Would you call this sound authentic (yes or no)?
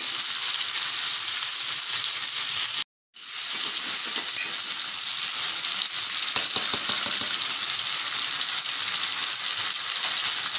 yes